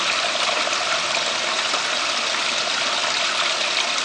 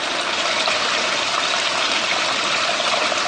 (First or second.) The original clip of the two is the first